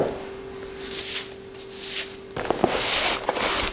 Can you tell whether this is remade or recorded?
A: recorded